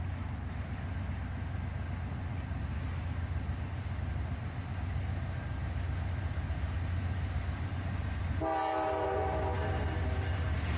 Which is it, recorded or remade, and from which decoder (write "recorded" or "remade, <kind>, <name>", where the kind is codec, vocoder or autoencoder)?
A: recorded